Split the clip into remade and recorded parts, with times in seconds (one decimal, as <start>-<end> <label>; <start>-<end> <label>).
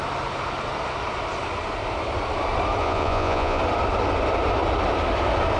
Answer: 0.0-2.8 recorded; 2.8-3.6 remade; 3.6-5.6 recorded